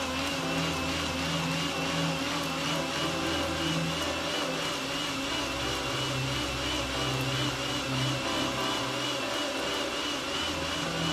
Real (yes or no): yes